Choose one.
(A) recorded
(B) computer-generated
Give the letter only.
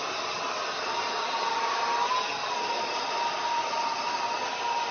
A